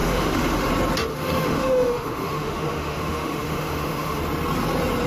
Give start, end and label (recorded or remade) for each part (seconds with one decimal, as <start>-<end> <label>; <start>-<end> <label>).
0.0-0.7 remade; 0.7-1.1 recorded; 1.1-4.2 remade; 4.2-5.1 recorded